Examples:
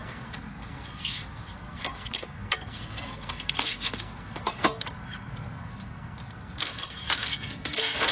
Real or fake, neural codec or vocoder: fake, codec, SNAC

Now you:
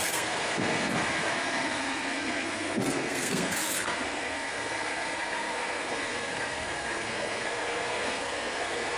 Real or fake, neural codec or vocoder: fake, codec, SNAC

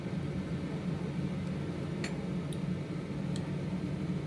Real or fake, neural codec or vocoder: real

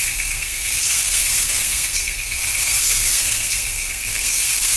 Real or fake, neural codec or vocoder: fake, codec, SNAC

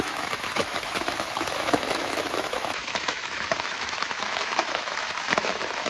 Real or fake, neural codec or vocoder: fake, autoencoder, DAC-VAE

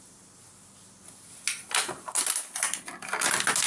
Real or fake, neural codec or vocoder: real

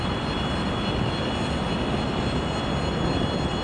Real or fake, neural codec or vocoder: real